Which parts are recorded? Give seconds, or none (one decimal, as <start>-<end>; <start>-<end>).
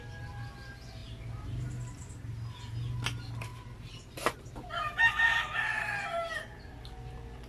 0.0-7.5